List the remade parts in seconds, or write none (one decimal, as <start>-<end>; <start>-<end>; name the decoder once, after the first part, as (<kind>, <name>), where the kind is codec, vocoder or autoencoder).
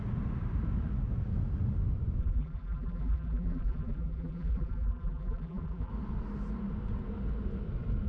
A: 2.2-5.9 (vocoder, BigVGAN v2)